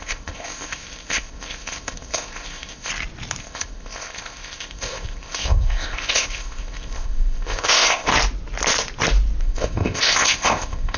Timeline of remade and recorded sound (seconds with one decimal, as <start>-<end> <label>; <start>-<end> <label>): 0.0-2.9 remade; 2.9-3.4 recorded; 3.4-8.1 remade; 8.1-9.4 recorded; 9.4-11.0 remade